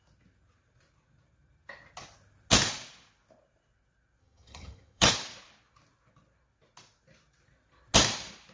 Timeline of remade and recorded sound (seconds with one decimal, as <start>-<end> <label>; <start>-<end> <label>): 0.0-4.2 recorded; 4.2-5.1 remade; 5.1-8.5 recorded